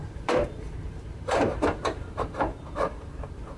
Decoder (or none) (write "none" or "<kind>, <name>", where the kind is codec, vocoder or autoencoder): vocoder, BigVGAN v2